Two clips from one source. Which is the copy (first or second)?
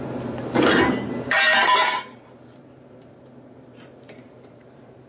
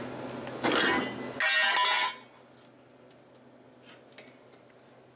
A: first